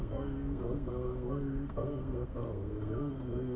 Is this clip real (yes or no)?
no